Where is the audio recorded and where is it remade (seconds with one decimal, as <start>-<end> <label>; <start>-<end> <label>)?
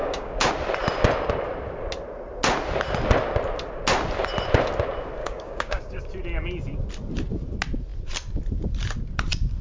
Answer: 0.0-0.5 remade; 0.5-5.2 recorded; 5.2-6.0 remade; 6.0-9.6 recorded